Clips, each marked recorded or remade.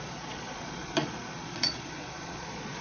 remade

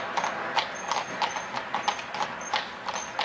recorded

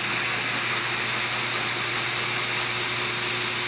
recorded